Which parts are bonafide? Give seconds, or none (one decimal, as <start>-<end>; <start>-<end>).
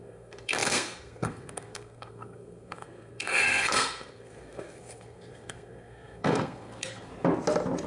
7.1-7.9